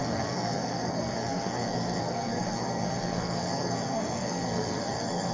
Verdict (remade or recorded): remade